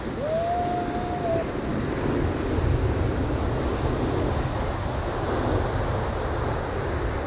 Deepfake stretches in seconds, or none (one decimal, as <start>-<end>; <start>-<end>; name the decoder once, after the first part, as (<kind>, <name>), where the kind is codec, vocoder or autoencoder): none